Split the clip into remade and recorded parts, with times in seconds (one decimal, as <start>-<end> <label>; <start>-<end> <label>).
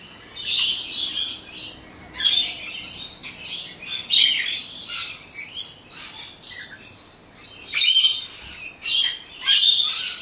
0.0-10.2 recorded